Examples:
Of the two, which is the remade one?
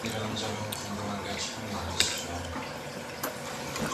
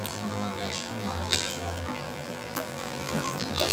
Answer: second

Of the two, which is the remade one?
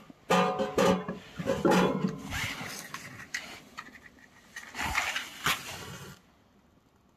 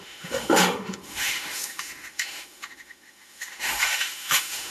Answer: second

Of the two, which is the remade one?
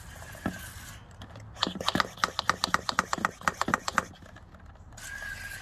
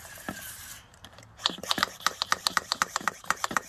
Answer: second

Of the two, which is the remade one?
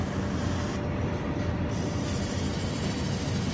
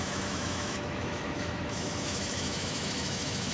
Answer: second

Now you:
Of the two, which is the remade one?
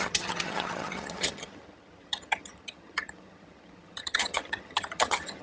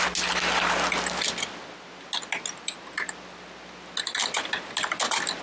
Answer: first